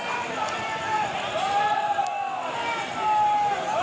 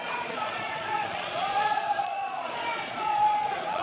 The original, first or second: first